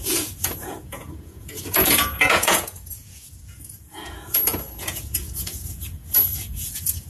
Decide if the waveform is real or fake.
fake